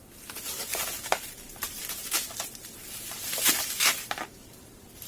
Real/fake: fake